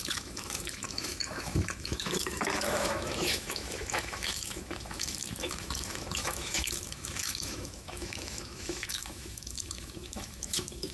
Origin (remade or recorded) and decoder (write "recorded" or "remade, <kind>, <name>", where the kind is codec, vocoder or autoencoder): remade, autoencoder, DAC-VAE